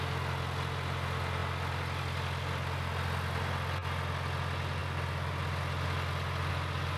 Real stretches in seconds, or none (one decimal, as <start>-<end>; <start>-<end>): 0.0-7.0